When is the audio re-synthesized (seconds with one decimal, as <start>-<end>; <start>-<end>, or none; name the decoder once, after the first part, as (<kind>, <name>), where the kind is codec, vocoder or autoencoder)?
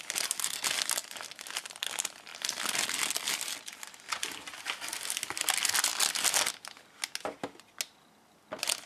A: none